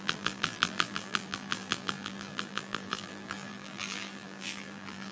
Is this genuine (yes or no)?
no